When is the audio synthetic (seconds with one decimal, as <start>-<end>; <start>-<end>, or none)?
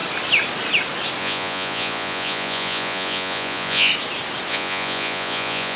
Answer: 1.2-3.9; 4.5-5.8